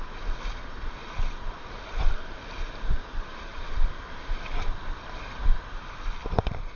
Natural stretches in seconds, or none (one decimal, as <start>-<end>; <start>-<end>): 0.0-6.8